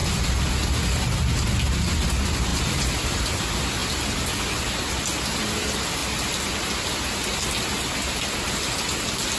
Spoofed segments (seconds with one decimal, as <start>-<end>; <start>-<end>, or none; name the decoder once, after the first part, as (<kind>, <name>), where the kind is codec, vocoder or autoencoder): 0.0-0.5 (vocoder, BigVGAN v2); 2.5-3.4